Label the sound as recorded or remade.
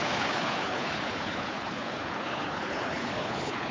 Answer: remade